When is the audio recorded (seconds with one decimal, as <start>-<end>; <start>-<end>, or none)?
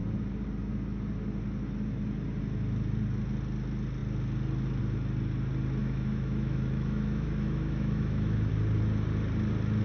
0.0-5.8; 8.5-9.8